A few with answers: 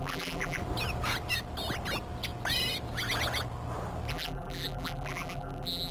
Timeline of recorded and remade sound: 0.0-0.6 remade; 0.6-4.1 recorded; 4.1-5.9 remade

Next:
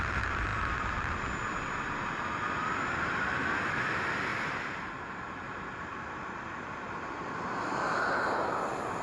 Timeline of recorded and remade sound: 0.0-4.3 recorded; 4.3-8.5 remade; 8.5-9.0 recorded

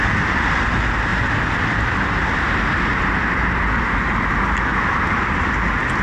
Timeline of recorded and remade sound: 0.0-1.1 recorded; 1.1-3.6 remade; 3.6-4.7 recorded; 4.7-5.5 remade; 5.5-6.0 recorded

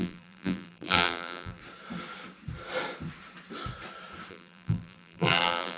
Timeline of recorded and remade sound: 0.0-1.6 remade; 1.6-4.3 recorded; 4.3-5.8 remade